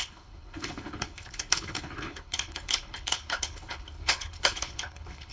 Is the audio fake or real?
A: fake